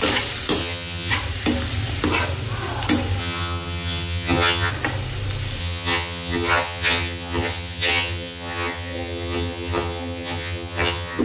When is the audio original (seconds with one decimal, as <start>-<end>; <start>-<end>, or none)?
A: 0.0-0.6; 1.1-3.2; 4.7-5.6